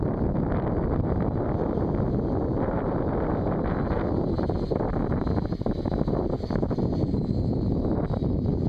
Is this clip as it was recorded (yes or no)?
yes